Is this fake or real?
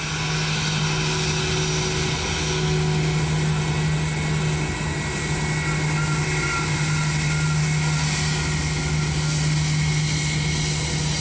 real